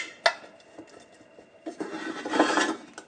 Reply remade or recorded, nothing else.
recorded